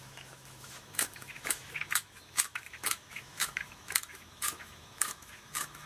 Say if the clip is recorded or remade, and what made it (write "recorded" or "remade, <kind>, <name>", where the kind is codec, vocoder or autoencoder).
remade, autoencoder, DAC-VAE